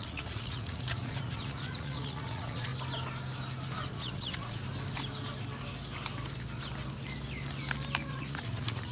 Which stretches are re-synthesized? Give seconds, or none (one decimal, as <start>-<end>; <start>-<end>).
0.0-2.7; 3.9-4.6; 8.1-8.9